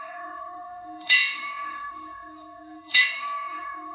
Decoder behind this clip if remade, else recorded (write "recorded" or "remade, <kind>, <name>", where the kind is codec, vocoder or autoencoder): remade, autoencoder, DAC-VAE